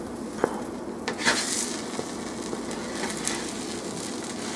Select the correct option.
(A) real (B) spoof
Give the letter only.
A